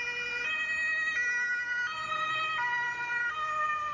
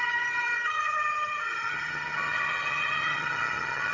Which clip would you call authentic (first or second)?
first